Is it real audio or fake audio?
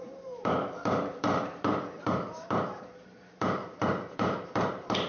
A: fake